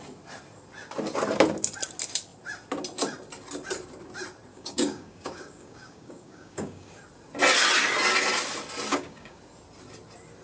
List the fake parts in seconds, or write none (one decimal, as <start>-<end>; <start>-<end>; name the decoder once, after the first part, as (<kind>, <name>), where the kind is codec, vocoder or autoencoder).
4.5-6.9 (codec, DAC); 8.9-9.4